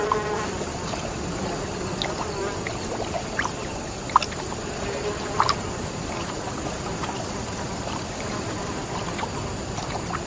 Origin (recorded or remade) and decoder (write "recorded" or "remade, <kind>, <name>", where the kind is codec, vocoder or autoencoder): recorded